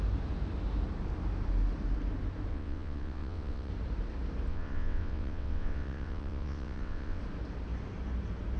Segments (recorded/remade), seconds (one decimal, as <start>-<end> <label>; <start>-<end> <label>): 0.0-2.5 recorded; 2.5-3.7 remade; 3.7-4.5 recorded; 4.5-7.2 remade; 7.2-8.6 recorded